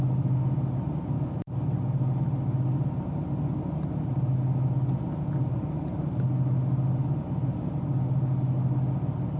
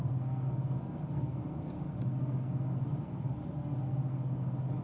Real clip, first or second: first